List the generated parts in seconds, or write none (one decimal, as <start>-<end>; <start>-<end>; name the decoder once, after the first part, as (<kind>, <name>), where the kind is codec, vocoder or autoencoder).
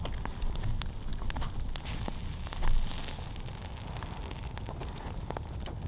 none